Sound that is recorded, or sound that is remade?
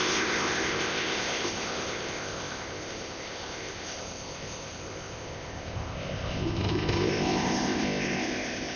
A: remade